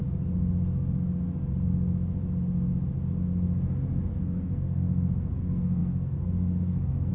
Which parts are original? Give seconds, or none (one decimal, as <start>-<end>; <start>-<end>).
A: 0.0-4.2